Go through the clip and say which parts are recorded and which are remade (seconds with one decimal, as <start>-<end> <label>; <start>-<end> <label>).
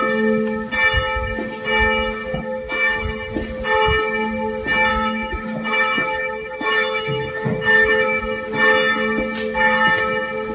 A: 0.0-2.3 recorded; 2.3-3.0 remade; 3.0-4.9 recorded; 4.9-8.2 remade; 8.2-10.5 recorded